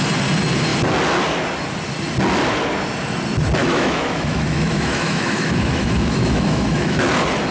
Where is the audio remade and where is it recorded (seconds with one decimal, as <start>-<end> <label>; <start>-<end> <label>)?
0.0-3.6 recorded; 3.6-7.0 remade; 7.0-7.5 recorded